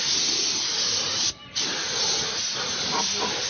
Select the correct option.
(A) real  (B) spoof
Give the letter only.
A